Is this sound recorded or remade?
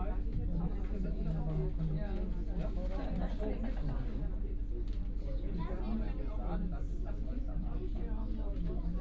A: recorded